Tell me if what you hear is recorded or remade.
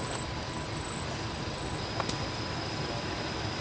recorded